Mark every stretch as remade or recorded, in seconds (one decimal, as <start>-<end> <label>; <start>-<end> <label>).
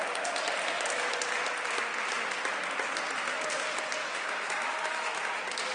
0.0-4.0 recorded; 4.0-5.2 remade; 5.2-5.7 recorded